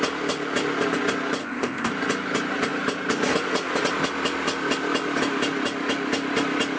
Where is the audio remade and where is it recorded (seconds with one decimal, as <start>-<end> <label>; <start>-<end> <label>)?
0.0-1.4 recorded; 1.4-1.9 remade; 1.9-6.8 recorded